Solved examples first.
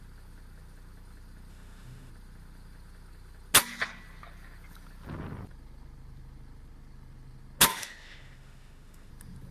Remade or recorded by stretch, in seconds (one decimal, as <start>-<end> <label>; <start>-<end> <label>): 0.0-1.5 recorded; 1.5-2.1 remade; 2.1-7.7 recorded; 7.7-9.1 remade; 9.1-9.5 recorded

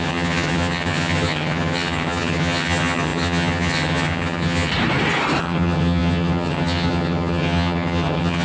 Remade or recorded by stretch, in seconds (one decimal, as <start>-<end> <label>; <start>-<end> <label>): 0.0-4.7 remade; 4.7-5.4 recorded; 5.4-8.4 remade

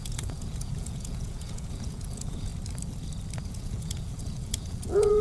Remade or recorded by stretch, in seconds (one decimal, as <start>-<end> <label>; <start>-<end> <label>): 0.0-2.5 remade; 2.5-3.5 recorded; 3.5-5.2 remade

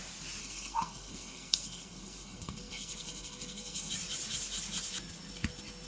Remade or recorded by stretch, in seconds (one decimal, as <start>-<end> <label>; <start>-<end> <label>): 0.0-0.4 recorded; 0.4-3.9 remade; 3.9-5.9 recorded